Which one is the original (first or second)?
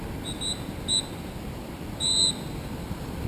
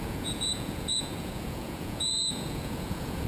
first